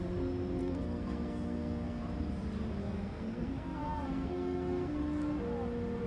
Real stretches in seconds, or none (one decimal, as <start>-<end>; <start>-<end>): 0.0-0.6; 2.0-2.8; 5.0-6.1